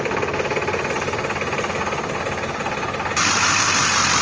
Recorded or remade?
recorded